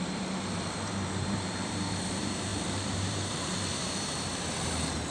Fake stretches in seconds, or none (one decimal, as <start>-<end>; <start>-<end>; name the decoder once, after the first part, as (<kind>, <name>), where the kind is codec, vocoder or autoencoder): 0.0-5.1 (vocoder, BigVGAN v2)